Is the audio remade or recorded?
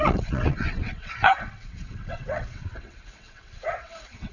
remade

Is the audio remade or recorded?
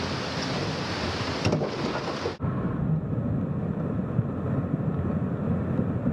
recorded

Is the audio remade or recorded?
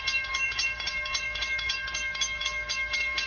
remade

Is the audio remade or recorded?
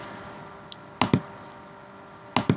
recorded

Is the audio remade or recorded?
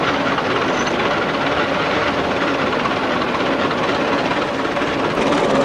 recorded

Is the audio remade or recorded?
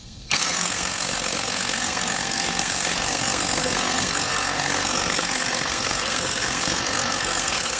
remade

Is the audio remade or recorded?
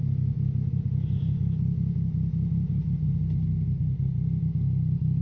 recorded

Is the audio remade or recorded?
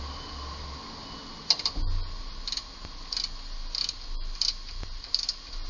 recorded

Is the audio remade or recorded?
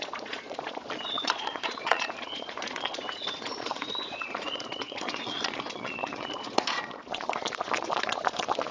remade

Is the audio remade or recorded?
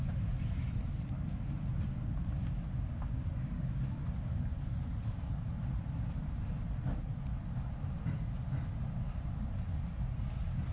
recorded